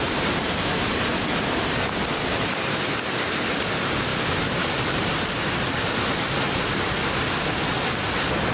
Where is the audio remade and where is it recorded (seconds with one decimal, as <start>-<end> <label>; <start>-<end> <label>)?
0.0-8.5 recorded